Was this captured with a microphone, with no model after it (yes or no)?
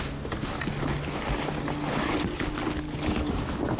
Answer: yes